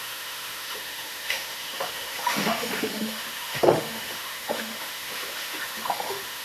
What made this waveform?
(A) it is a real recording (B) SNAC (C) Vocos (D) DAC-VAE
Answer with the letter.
D